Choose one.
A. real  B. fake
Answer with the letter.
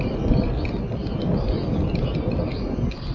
A